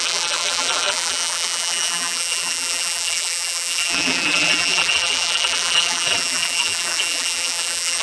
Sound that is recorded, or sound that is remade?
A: remade